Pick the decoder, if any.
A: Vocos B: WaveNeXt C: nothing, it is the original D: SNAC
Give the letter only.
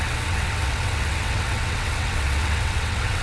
B